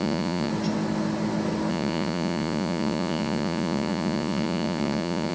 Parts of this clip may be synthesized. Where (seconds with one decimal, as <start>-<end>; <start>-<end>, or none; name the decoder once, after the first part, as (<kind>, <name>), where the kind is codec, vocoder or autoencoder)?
0.0-0.5 (vocoder, Vocos); 1.7-5.3